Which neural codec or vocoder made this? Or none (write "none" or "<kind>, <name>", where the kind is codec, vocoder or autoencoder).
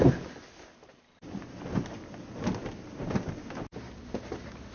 none